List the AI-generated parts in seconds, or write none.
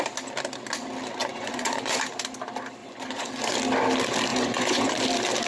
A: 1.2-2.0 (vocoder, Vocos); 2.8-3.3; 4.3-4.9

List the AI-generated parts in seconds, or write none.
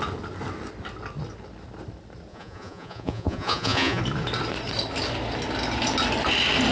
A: 2.3-4.0 (vocoder, Vocos)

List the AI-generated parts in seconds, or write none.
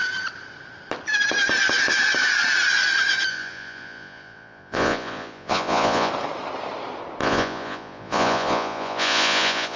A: 3.3-6.1 (vocoder, Vocos); 7.2-9.8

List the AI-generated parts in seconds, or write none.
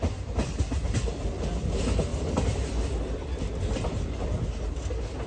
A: none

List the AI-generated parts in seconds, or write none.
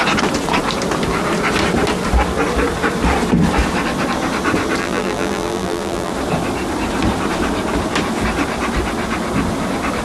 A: 4.8-6.1 (vocoder, BigVGAN v2)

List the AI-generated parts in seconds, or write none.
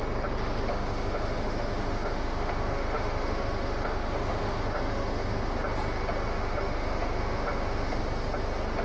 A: 0.7-5.5 (autoencoder, DAC-VAE); 6.3-8.0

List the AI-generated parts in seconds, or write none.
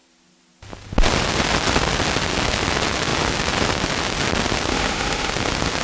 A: 4.7-5.3 (autoencoder, DAC-VAE)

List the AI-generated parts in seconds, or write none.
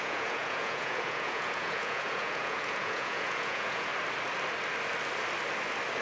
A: 0.0-3.9 (vocoder, Vocos)